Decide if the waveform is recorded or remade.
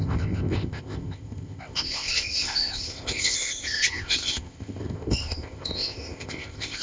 remade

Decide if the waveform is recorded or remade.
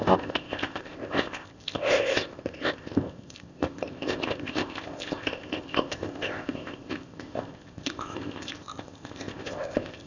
remade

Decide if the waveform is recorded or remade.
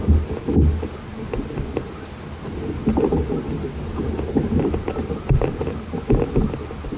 recorded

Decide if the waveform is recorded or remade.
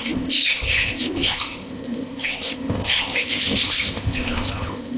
remade